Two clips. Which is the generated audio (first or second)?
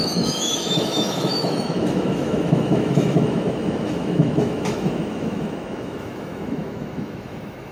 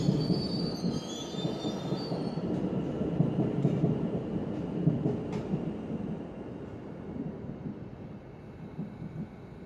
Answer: first